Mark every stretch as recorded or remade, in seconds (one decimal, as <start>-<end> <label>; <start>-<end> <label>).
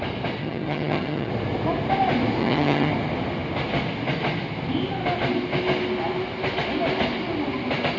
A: 0.0-0.4 recorded; 0.4-1.3 remade; 1.3-2.4 recorded; 2.4-2.9 remade; 2.9-8.0 recorded